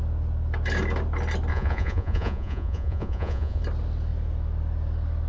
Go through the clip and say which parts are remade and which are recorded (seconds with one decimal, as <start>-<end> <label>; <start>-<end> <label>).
0.0-1.5 recorded; 1.5-3.6 remade; 3.6-5.3 recorded